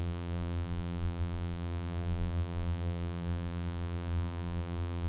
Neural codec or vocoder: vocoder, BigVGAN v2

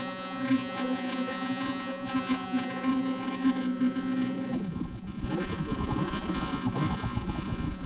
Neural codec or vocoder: vocoder, Vocos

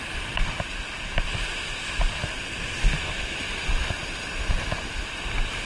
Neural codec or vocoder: none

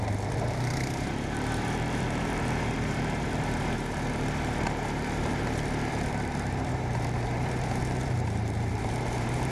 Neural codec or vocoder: vocoder, BigVGAN v2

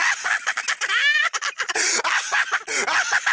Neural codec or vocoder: none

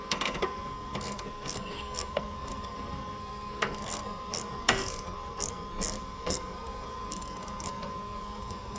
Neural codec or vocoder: codec, SNAC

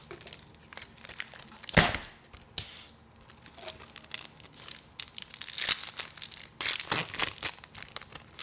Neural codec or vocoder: none